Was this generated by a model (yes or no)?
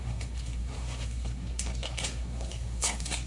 yes